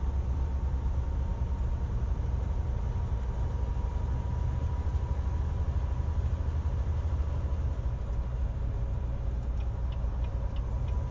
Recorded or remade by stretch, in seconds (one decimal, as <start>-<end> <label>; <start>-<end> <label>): 0.0-11.1 recorded